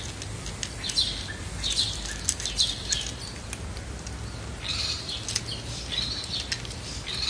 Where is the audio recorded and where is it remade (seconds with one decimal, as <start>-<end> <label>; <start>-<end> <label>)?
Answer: 0.0-4.5 recorded; 4.5-5.1 remade; 5.1-7.3 recorded